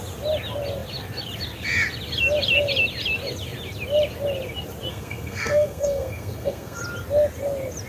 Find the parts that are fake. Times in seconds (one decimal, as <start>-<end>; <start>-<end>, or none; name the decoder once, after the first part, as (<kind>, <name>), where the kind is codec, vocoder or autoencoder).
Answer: 4.9-6.8 (codec, SNAC)